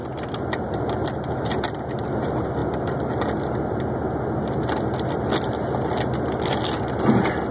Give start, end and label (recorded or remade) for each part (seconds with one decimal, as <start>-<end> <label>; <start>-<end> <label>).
0.0-7.5 recorded